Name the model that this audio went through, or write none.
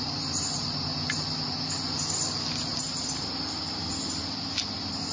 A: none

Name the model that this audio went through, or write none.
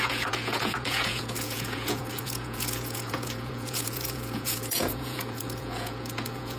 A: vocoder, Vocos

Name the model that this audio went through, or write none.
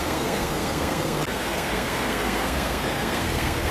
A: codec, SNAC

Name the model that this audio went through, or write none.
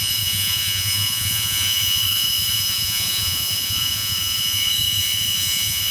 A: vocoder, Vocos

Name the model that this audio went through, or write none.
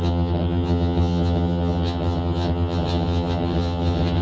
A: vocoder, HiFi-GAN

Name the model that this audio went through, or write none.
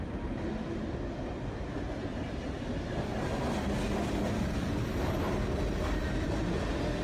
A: none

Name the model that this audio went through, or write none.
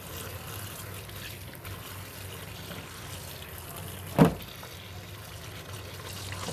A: none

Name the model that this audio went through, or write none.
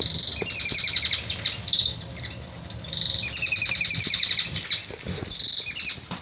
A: none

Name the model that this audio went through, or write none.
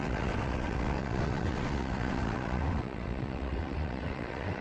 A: vocoder, WaveNeXt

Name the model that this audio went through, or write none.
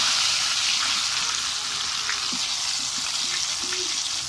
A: none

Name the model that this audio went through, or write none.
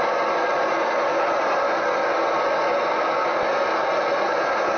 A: none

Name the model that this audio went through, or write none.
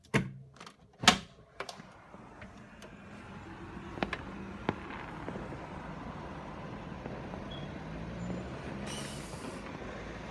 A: none